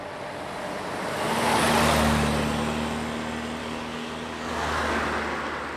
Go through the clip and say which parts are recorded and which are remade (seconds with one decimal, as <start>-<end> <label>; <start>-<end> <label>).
0.0-3.6 recorded; 3.6-5.0 remade; 5.0-5.8 recorded